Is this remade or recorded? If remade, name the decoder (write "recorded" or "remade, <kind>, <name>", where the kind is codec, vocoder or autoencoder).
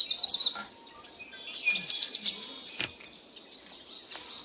recorded